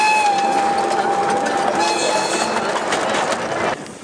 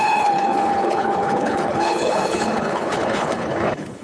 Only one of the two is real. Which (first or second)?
first